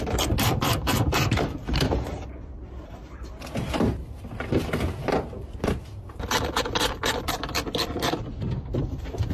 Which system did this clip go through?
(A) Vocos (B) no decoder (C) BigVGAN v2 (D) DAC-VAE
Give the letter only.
C